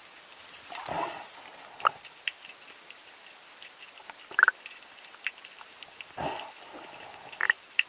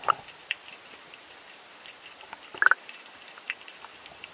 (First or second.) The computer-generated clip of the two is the second